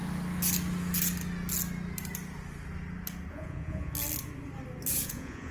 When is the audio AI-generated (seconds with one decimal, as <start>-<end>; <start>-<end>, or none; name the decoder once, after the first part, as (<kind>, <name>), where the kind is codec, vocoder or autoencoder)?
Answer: 3.3-3.9 (vocoder, Vocos); 4.9-5.5